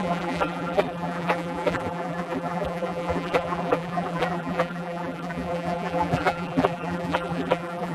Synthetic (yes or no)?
yes